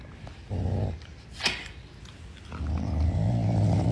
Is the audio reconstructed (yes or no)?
no